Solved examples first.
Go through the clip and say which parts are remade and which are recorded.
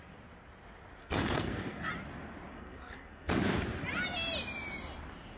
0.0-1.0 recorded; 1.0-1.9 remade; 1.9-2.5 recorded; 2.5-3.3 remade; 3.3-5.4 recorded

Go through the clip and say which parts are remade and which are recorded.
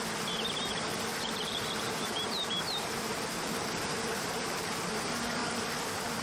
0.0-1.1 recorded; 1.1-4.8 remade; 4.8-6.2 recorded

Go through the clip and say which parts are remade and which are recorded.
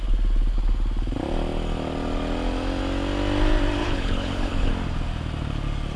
0.0-3.8 recorded; 3.8-4.7 remade; 4.7-6.0 recorded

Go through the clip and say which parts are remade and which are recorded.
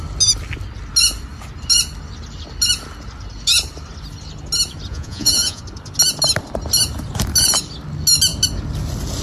0.0-4.9 recorded; 4.9-5.6 remade; 5.6-9.2 recorded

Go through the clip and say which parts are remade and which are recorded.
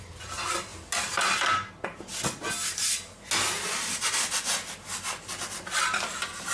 0.0-6.5 recorded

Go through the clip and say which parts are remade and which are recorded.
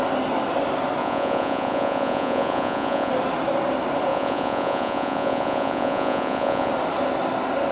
0.0-1.0 recorded; 1.0-3.1 remade; 3.1-4.1 recorded; 4.1-6.7 remade; 6.7-7.7 recorded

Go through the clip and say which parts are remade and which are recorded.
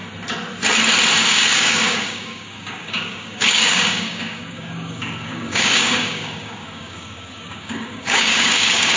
0.0-1.2 recorded; 1.2-9.0 remade